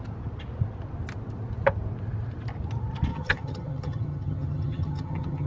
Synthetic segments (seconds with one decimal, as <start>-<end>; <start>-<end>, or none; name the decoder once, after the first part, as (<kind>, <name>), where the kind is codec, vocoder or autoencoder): 3.1-5.5 (vocoder, HiFi-GAN)